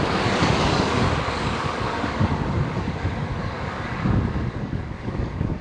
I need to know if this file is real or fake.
fake